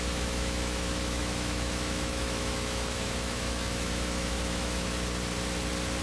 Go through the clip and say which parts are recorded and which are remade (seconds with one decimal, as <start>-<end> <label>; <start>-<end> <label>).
0.0-4.9 remade; 4.9-6.0 recorded